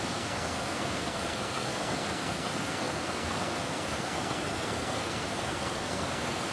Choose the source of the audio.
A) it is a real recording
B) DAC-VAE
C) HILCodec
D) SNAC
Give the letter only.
D